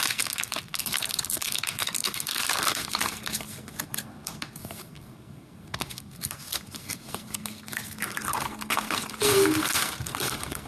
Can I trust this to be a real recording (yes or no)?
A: no